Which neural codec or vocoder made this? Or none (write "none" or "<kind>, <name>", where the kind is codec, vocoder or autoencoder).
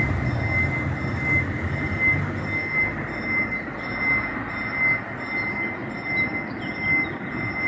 none